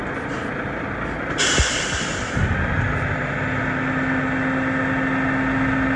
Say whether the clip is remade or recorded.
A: recorded